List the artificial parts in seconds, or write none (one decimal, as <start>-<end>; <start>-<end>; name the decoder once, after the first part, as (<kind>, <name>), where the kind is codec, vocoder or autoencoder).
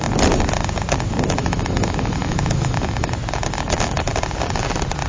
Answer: 1.4-3.1 (autoencoder, DAC-VAE)